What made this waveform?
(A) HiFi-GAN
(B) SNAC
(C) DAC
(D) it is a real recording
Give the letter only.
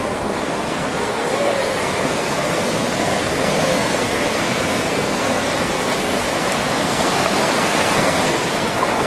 B